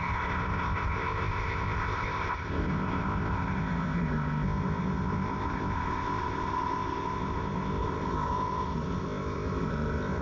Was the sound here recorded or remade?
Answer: remade